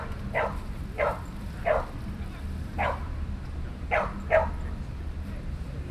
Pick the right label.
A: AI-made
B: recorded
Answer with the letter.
B